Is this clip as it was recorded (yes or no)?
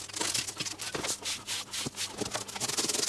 yes